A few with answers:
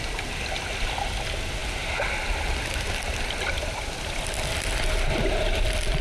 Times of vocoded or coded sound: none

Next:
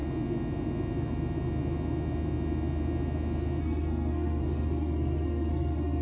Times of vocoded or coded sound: 3.6-6.0 (codec, SNAC)